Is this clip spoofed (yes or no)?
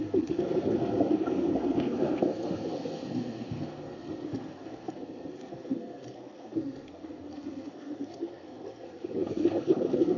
yes